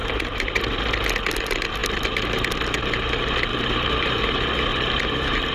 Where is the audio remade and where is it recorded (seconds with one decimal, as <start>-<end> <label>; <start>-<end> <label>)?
0.0-0.6 remade; 0.6-3.5 recorded; 3.5-4.3 remade; 4.3-4.7 recorded; 4.7-5.5 remade

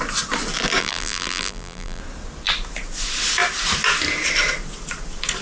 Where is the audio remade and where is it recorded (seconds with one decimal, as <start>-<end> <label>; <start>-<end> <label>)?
0.0-0.8 recorded; 0.8-2.0 remade; 2.0-5.4 recorded

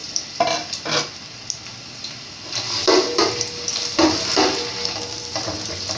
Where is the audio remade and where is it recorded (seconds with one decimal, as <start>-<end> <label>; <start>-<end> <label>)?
0.0-0.9 remade; 0.9-6.0 recorded